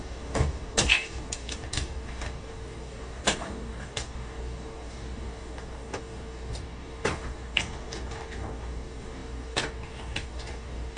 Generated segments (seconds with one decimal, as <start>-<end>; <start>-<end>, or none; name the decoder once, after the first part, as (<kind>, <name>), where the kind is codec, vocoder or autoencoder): 0.0-11.0 (codec, DAC)